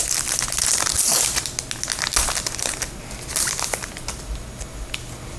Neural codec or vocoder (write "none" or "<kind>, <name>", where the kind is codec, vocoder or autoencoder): none